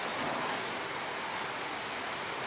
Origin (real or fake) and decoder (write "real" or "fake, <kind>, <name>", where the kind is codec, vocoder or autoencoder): real